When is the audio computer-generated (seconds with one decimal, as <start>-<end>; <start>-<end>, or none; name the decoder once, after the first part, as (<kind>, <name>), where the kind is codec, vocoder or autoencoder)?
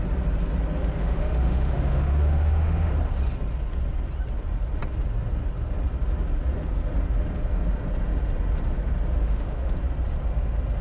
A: 1.0-2.9 (autoencoder, DAC-VAE); 9.2-9.8